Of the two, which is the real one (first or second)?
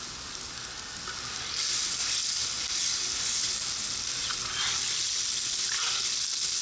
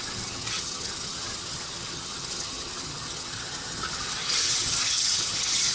first